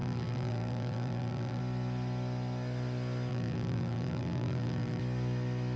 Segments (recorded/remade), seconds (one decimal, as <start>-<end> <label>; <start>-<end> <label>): 0.0-1.6 remade; 1.6-3.3 recorded; 3.3-5.0 remade; 5.0-5.8 recorded